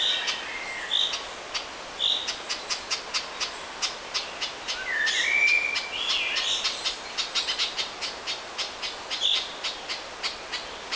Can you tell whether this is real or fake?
real